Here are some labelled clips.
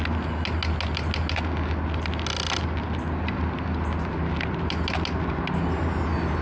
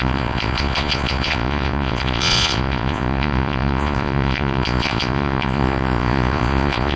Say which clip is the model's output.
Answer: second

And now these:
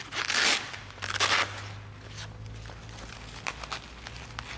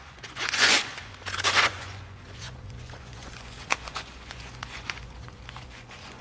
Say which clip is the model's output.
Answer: second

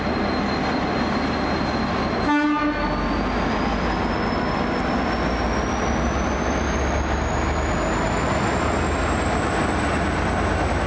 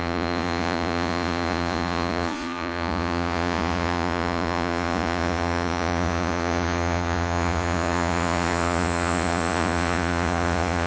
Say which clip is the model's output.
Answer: second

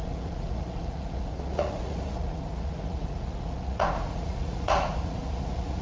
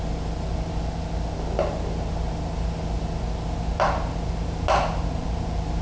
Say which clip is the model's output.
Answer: first